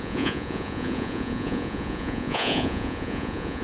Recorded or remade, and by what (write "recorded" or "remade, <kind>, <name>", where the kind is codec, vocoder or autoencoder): remade, vocoder, Vocos